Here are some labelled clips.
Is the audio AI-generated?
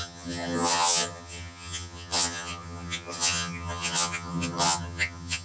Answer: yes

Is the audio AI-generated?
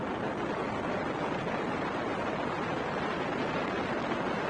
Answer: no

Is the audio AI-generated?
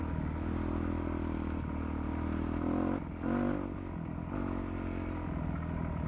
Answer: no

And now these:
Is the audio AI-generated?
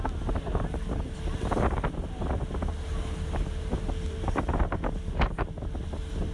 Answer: no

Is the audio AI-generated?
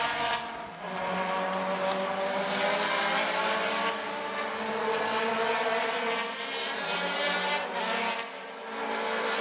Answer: no